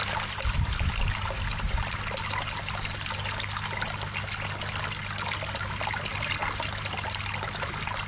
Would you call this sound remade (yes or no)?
no